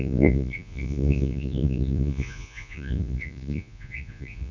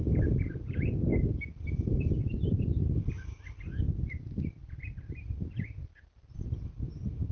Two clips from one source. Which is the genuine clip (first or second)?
second